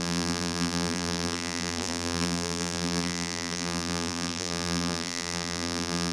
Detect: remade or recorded remade